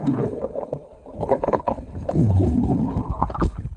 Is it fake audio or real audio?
fake